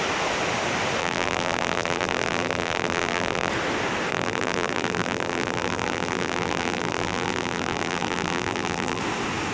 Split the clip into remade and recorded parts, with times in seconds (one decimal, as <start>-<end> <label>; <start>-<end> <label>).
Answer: 0.0-1.0 recorded; 1.0-3.5 remade; 3.5-4.1 recorded; 4.1-9.0 remade; 9.0-9.5 recorded